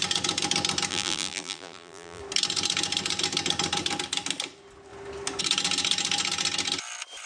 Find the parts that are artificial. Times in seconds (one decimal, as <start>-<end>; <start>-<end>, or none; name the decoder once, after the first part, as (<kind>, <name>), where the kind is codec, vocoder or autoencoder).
0.9-2.2 (vocoder, BigVGAN v2)